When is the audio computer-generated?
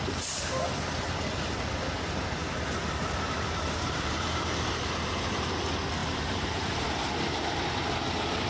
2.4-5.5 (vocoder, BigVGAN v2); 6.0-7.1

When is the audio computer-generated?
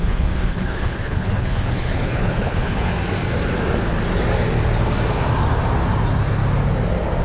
0.0-2.9 (codec, HILCodec)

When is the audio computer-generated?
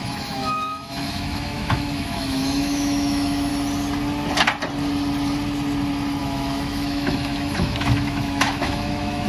0.0-3.5 (autoencoder, DAC-VAE); 6.2-9.3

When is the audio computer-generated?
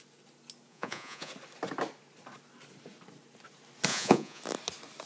0.7-1.3 (vocoder, Vocos); 3.9-4.4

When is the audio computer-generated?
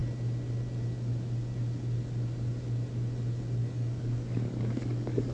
3.6-5.3 (codec, DAC)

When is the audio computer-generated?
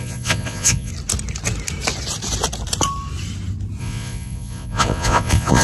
0.0-0.9 (vocoder, Vocos); 3.8-5.6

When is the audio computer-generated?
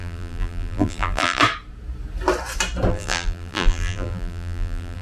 0.0-1.4 (vocoder, BigVGAN v2); 2.9-5.0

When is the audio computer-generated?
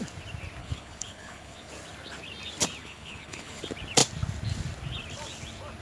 0.6-1.7 (codec, HILCodec); 2.8-3.6